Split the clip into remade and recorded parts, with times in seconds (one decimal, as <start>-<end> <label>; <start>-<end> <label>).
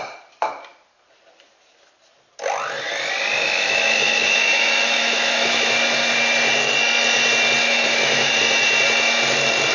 0.0-3.4 recorded; 3.4-5.7 remade; 5.7-7.6 recorded; 7.6-8.3 remade; 8.3-9.7 recorded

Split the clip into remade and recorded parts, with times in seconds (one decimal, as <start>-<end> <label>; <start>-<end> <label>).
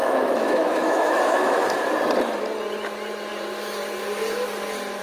0.0-1.8 remade; 1.8-5.0 recorded